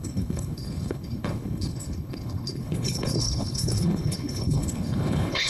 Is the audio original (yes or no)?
no